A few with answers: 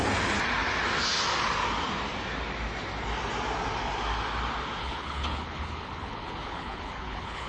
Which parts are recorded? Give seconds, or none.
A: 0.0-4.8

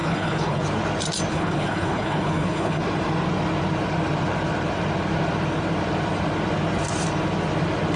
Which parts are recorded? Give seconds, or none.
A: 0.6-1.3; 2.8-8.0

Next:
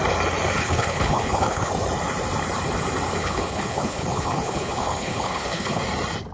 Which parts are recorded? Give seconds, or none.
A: 0.0-0.6; 1.7-3.2; 5.8-6.3

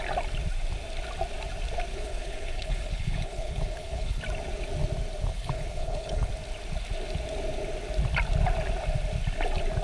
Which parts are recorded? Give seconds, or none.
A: 0.0-1.9; 4.2-5.3; 6.3-9.8